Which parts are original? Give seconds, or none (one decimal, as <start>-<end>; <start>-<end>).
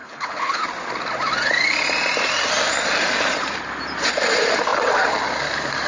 0.6-5.9